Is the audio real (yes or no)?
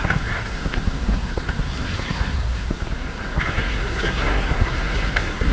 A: no